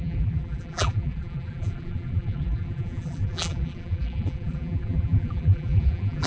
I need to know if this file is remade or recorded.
remade